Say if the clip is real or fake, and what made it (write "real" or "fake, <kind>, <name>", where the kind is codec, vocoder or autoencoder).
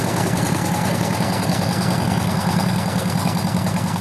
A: fake, codec, SNAC